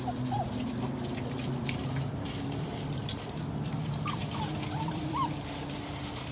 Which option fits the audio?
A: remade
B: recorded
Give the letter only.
A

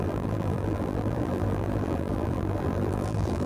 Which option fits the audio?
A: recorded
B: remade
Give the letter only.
B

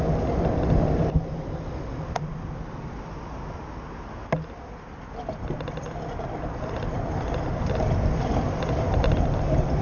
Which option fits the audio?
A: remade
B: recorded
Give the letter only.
B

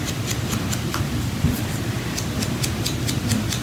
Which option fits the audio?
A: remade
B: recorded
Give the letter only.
B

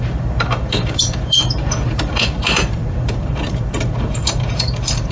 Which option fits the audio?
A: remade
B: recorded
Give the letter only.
A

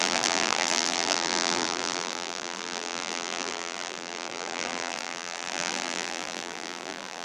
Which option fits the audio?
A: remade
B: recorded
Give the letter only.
A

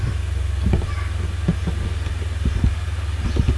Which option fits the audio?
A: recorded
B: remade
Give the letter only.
A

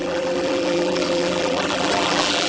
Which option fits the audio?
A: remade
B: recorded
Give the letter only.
A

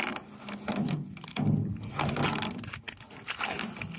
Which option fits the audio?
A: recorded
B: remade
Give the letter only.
A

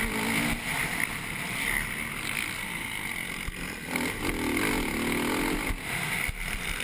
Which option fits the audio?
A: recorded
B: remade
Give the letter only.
A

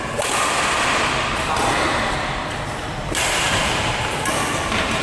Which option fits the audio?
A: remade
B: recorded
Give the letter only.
A